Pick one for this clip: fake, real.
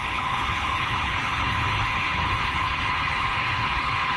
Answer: fake